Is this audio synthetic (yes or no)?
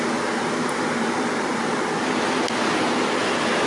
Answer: no